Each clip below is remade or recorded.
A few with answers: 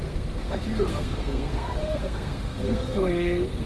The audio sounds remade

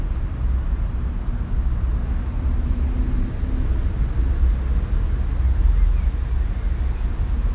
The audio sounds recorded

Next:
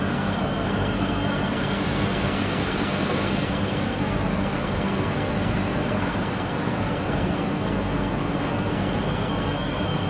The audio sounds remade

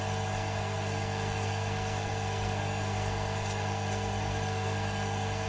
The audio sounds remade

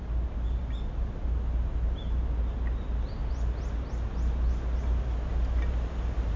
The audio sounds recorded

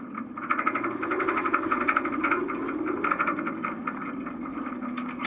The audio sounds recorded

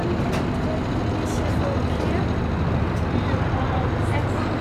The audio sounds recorded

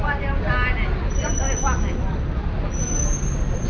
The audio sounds recorded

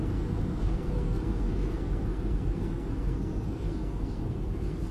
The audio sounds remade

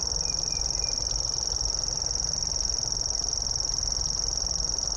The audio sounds recorded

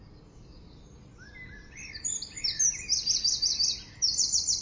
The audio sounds recorded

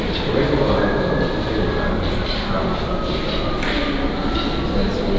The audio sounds recorded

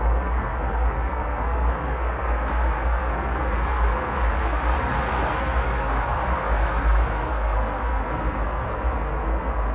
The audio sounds remade